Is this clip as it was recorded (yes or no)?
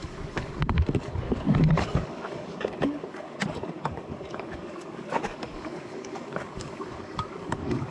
no